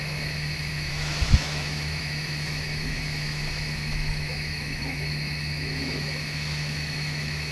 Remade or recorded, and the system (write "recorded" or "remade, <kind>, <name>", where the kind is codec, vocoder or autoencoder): remade, autoencoder, DAC-VAE